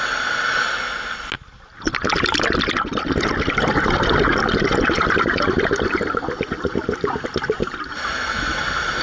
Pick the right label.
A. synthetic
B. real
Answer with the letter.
B